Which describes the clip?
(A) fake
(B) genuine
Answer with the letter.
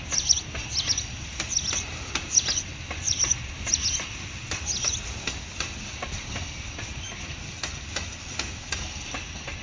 B